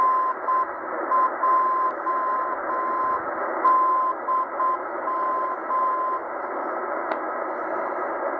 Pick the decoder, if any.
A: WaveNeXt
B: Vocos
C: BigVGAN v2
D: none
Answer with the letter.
D